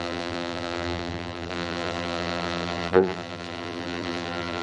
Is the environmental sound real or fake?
fake